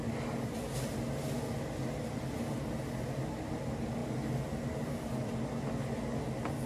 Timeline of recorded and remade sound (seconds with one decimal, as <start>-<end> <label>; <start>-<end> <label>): 0.0-6.7 recorded